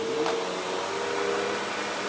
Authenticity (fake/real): real